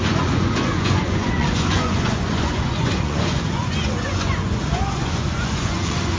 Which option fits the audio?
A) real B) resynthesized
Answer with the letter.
B